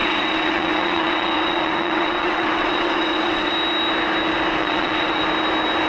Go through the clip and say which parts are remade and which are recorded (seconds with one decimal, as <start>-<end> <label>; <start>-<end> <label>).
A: 0.0-3.5 remade; 3.5-4.6 recorded; 4.6-5.2 remade; 5.2-5.9 recorded